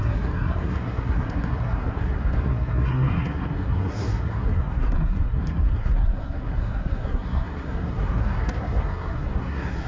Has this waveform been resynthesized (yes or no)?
yes